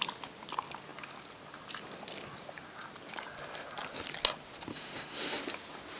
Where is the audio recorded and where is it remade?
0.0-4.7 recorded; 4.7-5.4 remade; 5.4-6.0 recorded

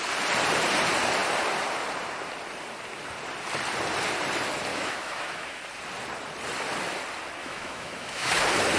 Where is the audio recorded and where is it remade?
0.0-4.7 recorded; 4.7-5.6 remade; 5.6-7.4 recorded; 7.4-8.3 remade; 8.3-8.8 recorded

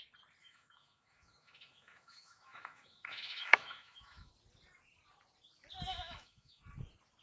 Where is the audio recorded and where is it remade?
0.0-0.4 recorded; 0.4-4.3 remade; 4.3-5.9 recorded; 5.9-6.6 remade; 6.6-7.2 recorded

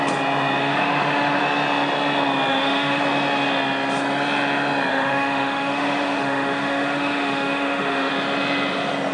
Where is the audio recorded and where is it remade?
0.0-0.6 recorded; 0.6-1.4 remade; 1.4-2.5 recorded; 2.5-3.0 remade; 3.0-4.9 recorded; 4.9-8.1 remade; 8.1-9.1 recorded